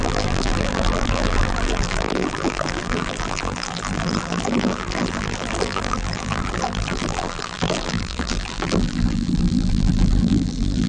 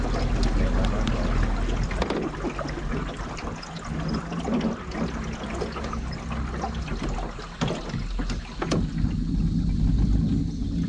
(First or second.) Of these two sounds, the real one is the second